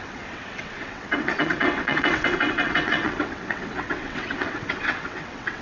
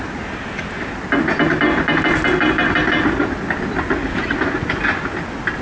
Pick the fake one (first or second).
first